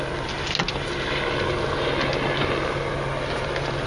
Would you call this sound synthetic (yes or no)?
no